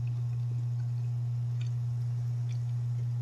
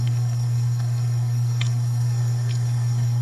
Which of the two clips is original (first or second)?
first